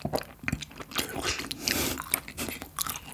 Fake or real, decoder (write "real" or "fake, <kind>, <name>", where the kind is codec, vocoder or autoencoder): real